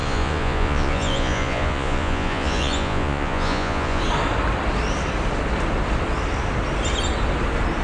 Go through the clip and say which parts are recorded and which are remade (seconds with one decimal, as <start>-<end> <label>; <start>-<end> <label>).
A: 0.0-4.0 remade; 4.0-7.8 recorded